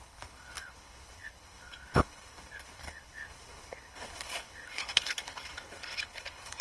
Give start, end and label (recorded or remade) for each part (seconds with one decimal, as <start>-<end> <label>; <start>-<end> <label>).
0.0-6.6 remade